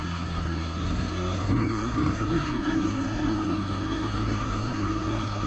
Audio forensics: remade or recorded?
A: remade